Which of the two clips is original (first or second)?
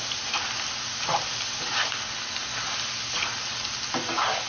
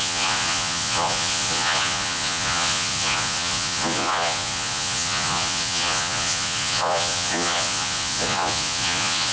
first